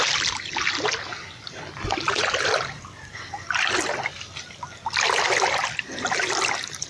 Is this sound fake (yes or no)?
no